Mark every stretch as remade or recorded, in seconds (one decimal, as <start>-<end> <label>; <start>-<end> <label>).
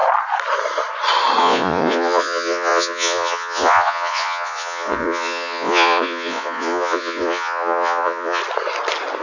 0.0-1.4 recorded; 1.4-8.4 remade; 8.4-9.2 recorded